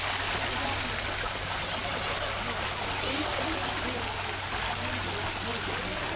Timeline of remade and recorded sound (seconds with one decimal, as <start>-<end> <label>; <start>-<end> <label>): 0.0-6.2 recorded